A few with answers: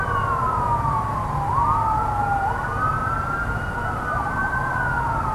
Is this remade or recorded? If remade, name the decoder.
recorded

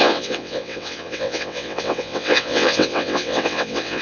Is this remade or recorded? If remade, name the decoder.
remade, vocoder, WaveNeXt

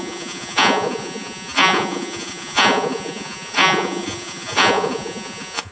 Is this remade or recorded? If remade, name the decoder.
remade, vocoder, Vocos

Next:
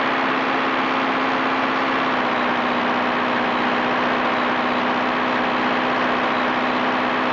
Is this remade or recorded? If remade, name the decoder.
recorded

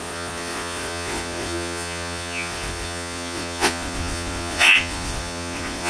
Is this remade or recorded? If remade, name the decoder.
remade, vocoder, Vocos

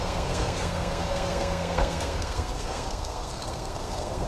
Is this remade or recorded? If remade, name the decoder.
remade, codec, SNAC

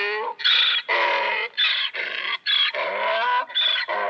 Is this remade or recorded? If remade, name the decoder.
recorded